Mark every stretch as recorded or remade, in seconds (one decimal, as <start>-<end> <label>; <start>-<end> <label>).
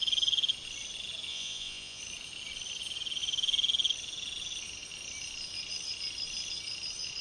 0.0-1.3 recorded; 1.3-2.0 remade; 2.0-7.2 recorded